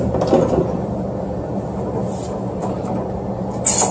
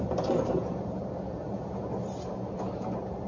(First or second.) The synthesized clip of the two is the second